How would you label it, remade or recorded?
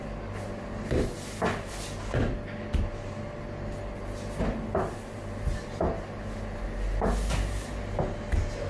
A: recorded